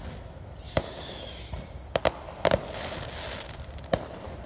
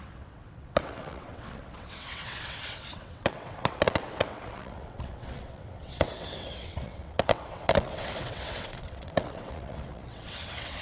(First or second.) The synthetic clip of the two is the second